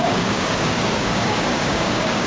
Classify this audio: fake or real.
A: fake